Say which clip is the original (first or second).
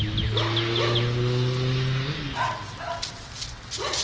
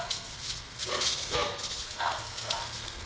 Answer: first